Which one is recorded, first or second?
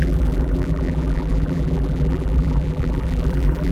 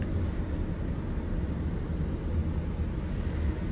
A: second